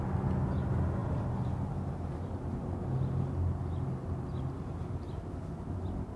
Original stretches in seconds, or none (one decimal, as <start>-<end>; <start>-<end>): 0.0-6.2